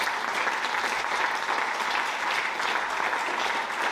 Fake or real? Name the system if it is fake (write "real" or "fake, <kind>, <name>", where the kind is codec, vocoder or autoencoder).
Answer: real